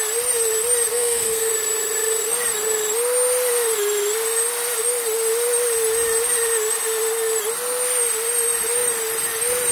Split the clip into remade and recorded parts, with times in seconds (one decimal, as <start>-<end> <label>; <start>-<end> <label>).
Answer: 0.0-0.9 recorded; 0.9-1.5 remade; 1.5-9.7 recorded